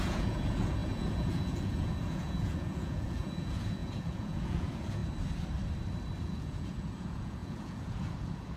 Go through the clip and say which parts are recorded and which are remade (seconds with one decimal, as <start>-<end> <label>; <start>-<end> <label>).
0.0-5.0 remade; 5.0-6.2 recorded; 6.2-8.6 remade